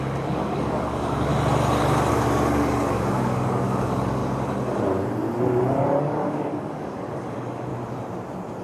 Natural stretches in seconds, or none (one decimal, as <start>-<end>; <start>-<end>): 1.3-2.1; 4.2-6.0; 7.7-8.6